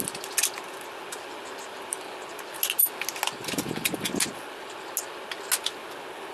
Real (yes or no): yes